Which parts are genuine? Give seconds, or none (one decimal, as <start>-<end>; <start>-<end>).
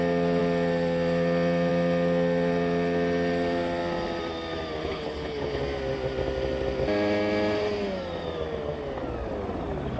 0.0-4.8; 5.6-10.0